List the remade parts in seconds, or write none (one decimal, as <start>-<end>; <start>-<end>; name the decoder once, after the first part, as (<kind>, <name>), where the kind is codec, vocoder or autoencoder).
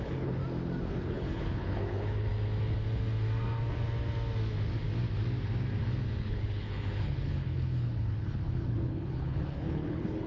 0.0-0.4 (codec, HILCodec); 0.9-2.3; 6.2-10.3